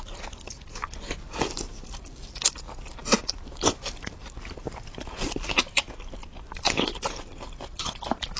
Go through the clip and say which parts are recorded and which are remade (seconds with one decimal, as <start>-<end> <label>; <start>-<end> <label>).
0.0-8.4 recorded